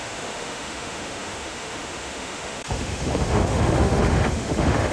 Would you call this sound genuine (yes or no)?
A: no